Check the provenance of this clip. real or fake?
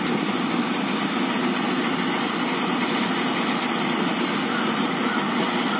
real